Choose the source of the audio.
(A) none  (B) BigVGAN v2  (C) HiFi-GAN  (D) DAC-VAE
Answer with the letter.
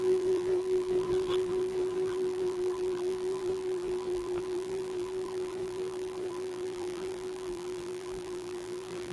B